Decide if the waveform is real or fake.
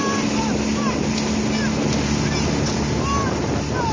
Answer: real